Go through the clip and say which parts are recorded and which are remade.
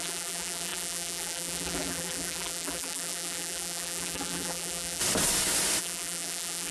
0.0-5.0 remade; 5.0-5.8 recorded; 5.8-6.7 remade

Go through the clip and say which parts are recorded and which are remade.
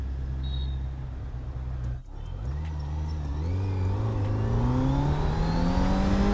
0.0-6.3 recorded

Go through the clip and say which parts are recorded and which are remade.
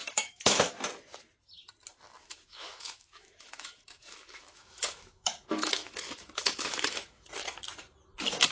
0.0-0.6 remade; 0.6-2.2 recorded; 2.2-7.3 remade; 7.3-8.5 recorded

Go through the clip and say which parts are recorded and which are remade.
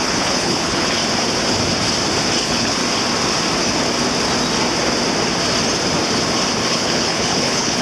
0.0-1.0 remade; 1.0-2.4 recorded; 2.4-2.8 remade; 2.8-6.7 recorded; 6.7-7.8 remade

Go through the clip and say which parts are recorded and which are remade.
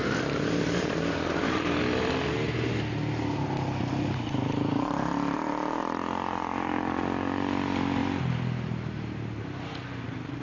0.0-2.3 remade; 2.3-5.8 recorded; 5.8-7.0 remade; 7.0-10.4 recorded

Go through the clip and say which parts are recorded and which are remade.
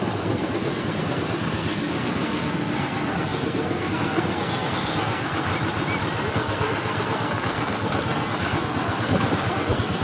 0.0-5.5 remade; 5.5-6.3 recorded; 6.3-10.0 remade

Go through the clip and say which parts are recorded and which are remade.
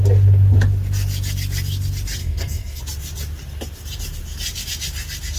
0.0-2.2 recorded; 2.2-2.8 remade; 2.8-5.4 recorded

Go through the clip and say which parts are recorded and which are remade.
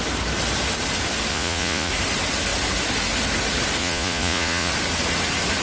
0.0-1.3 recorded; 1.3-1.9 remade; 1.9-3.8 recorded; 3.8-4.7 remade; 4.7-5.6 recorded